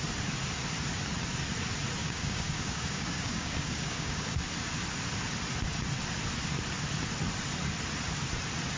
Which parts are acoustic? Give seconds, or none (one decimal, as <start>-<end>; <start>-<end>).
0.0-2.0; 4.4-8.8